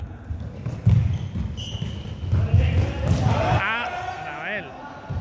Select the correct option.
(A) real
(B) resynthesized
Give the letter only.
A